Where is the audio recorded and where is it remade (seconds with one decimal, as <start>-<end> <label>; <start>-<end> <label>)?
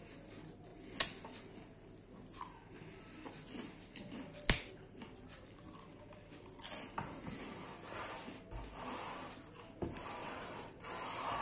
0.0-10.2 recorded; 10.2-10.8 remade; 10.8-11.4 recorded